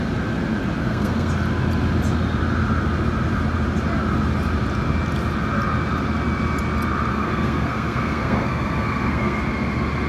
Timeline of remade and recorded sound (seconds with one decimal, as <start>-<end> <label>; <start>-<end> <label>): 0.0-0.8 recorded; 0.8-1.3 remade; 1.3-7.1 recorded; 7.1-9.4 remade; 9.4-10.1 recorded